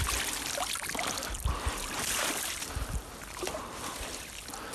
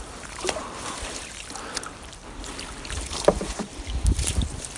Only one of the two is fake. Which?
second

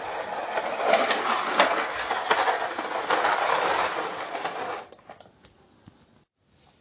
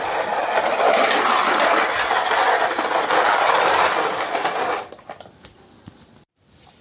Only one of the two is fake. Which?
second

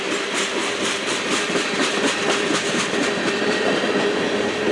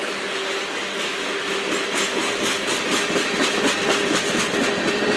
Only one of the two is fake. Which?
first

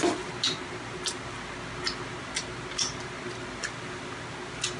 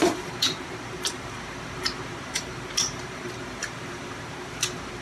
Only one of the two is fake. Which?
second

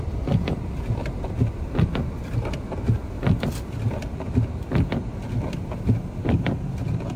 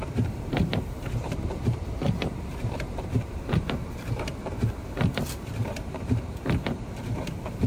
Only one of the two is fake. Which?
second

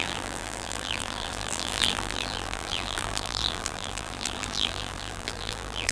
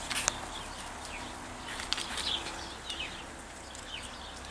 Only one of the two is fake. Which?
first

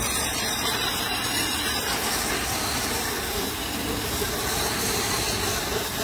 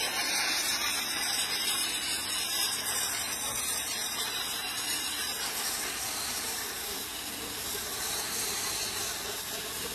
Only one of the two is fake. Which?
first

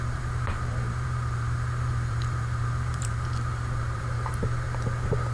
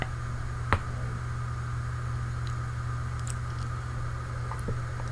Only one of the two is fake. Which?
first